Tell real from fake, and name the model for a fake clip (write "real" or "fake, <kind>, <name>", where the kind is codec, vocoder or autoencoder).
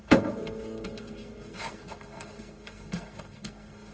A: fake, codec, SNAC